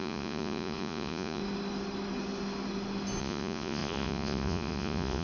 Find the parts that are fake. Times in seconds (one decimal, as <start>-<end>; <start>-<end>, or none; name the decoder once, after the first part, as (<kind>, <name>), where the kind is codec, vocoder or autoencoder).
0.0-1.4 (vocoder, Vocos); 3.2-5.2